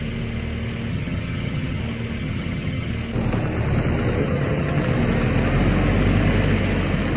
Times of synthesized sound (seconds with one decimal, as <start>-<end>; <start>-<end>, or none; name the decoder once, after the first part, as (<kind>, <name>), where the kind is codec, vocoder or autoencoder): 0.9-1.8 (vocoder, HiFi-GAN); 2.2-2.9; 4.2-4.8